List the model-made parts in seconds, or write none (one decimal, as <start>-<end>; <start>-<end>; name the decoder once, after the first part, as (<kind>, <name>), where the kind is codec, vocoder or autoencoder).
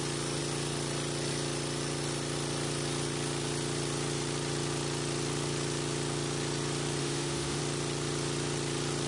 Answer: 7.0-7.6 (autoencoder, DAC-VAE)